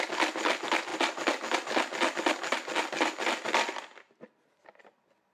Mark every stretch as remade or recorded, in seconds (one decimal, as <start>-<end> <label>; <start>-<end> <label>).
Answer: 0.0-5.3 recorded